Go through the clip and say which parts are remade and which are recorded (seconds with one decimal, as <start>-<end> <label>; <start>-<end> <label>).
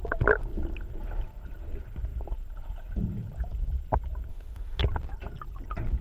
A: 0.0-4.3 recorded; 4.3-4.8 remade; 4.8-6.0 recorded